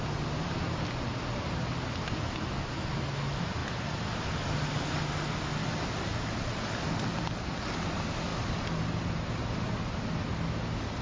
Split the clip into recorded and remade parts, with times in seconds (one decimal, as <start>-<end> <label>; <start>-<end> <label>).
0.0-5.6 recorded; 5.6-7.6 remade; 7.6-11.0 recorded